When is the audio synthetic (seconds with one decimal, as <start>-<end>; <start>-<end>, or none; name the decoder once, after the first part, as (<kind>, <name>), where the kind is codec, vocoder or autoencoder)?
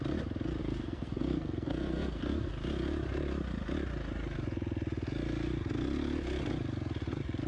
0.6-2.5 (codec, SNAC)